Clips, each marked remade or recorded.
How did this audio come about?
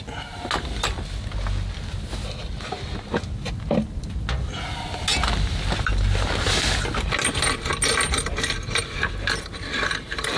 recorded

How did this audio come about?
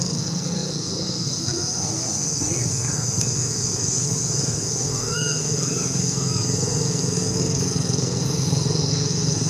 remade